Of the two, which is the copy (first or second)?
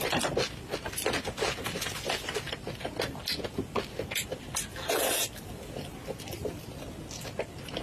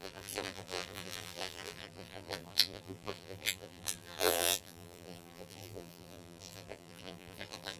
second